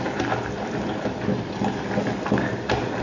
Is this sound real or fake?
real